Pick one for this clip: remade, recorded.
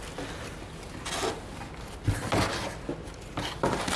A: recorded